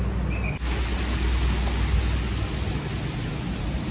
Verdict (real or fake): real